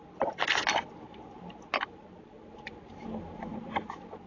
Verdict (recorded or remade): recorded